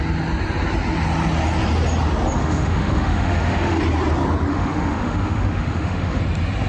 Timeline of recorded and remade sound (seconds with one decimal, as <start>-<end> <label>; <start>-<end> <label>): 0.0-2.4 recorded; 2.4-3.8 remade; 3.8-4.5 recorded; 4.5-6.2 remade; 6.2-6.7 recorded